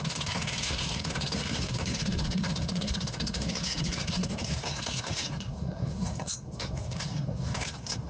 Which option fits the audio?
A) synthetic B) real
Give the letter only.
A